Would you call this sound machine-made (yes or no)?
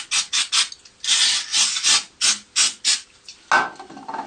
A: no